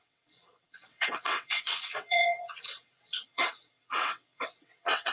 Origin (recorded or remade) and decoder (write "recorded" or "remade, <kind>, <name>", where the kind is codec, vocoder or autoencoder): remade, vocoder, WaveNeXt